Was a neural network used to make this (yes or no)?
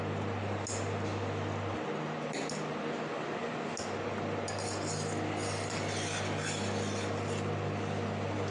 no